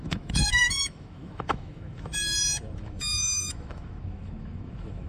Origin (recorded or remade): remade